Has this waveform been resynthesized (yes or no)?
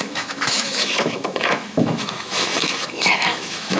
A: yes